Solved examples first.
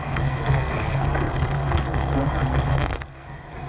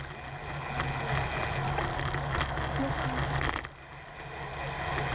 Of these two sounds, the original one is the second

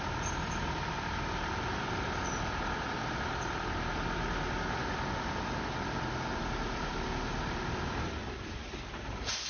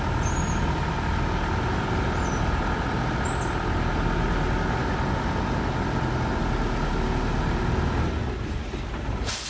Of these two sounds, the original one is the second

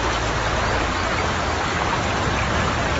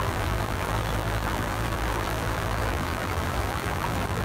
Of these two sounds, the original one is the first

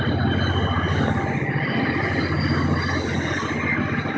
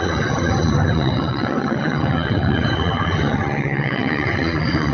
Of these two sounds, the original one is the first